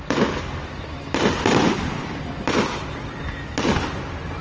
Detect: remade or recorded recorded